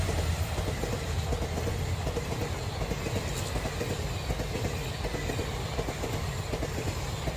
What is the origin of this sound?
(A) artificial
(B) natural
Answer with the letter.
B